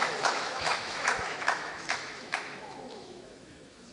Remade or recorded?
remade